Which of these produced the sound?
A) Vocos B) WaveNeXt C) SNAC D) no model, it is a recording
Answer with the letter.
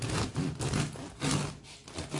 D